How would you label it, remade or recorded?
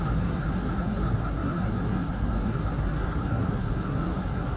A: remade